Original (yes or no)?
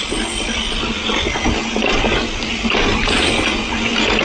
yes